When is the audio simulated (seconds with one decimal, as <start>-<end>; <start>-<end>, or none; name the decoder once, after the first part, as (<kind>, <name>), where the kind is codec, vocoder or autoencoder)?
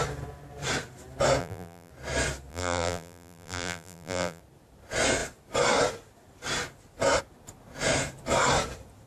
1.4-1.9 (vocoder, BigVGAN v2); 2.5-4.4